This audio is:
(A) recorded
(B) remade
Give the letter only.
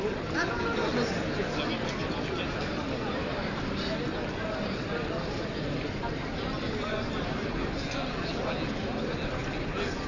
A